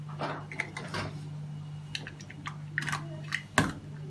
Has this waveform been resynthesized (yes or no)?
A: no